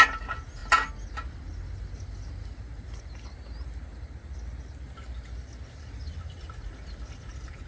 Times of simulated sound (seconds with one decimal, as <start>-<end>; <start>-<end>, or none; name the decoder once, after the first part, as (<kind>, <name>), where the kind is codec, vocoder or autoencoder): none